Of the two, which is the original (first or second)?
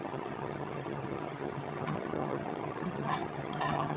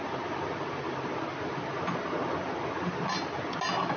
second